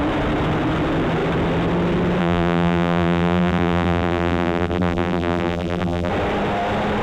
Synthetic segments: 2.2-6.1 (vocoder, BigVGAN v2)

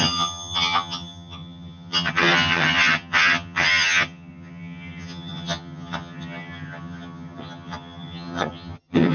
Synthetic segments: 0.0-9.1 (vocoder, HiFi-GAN)

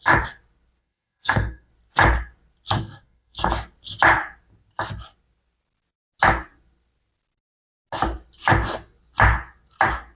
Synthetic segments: 0.8-1.7 (codec, SNAC); 2.8-3.5

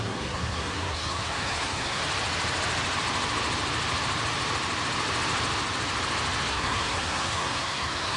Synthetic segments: 0.0-2.0 (codec, SNAC); 6.5-8.2

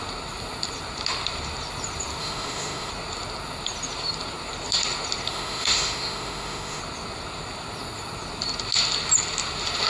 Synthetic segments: 2.2-2.9 (autoencoder, DAC-VAE); 5.3-6.8

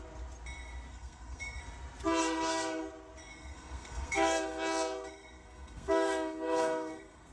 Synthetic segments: 0.9-1.6 (codec, SNAC); 2.2-2.8; 3.3-7.3

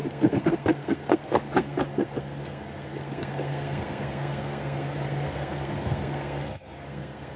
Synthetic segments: 0.0-7.4 (codec, SNAC)